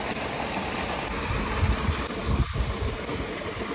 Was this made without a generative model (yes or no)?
yes